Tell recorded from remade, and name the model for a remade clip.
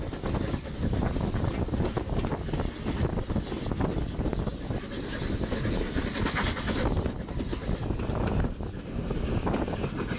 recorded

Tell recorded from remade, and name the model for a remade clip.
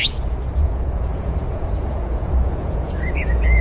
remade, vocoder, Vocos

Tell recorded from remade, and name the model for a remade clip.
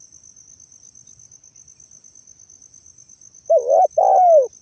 recorded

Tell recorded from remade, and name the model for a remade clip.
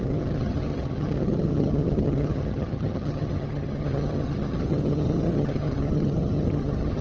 remade, vocoder, HiFi-GAN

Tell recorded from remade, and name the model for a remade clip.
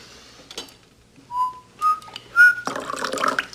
recorded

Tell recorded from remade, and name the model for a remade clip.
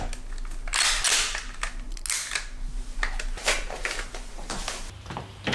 recorded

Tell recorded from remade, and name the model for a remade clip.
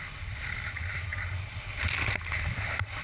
recorded